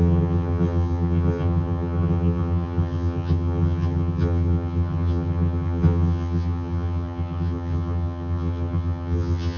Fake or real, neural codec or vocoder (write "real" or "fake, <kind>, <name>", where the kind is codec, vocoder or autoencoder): fake, vocoder, HiFi-GAN